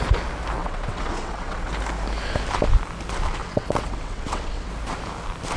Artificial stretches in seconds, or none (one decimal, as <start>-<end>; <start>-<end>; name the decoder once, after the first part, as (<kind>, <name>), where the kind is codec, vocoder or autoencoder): 0.6-1.7 (vocoder, WaveNeXt); 3.4-4.7